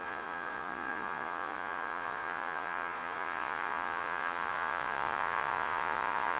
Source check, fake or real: fake